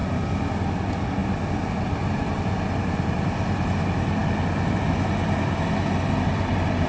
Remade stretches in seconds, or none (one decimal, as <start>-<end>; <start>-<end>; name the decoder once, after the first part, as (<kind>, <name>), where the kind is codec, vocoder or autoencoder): none